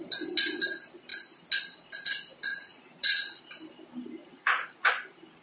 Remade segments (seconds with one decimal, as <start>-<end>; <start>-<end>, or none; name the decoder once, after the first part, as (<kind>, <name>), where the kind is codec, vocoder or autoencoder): 2.5-3.4 (vocoder, Vocos); 4.2-4.9